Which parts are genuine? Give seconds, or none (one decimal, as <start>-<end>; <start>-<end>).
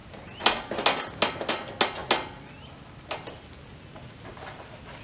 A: 0.0-5.0